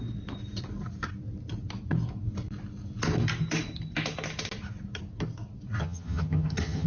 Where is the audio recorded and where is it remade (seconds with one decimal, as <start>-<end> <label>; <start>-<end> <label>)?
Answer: 0.0-5.8 recorded; 5.8-6.9 remade